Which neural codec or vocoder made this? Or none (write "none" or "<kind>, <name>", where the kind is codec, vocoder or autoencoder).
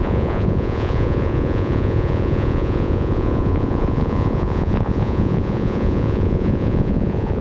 vocoder, Vocos